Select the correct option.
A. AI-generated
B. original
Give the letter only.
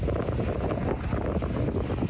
B